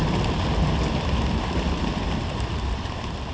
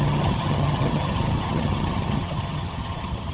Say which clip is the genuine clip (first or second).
first